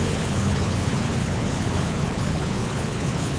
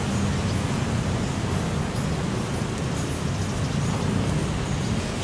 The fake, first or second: first